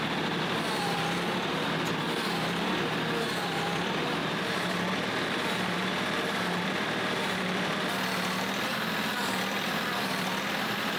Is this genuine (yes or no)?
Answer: no